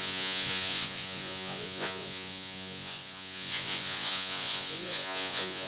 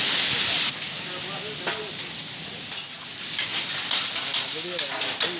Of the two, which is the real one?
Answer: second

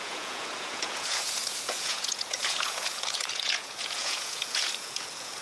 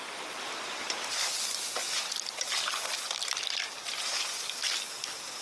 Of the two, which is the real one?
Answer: second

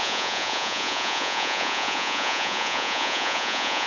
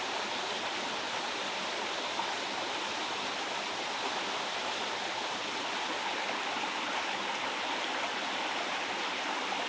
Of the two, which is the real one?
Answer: second